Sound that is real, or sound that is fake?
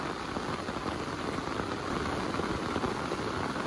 real